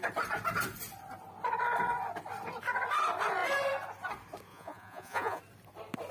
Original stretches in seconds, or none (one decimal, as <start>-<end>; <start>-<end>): 0.0-4.5; 5.4-6.1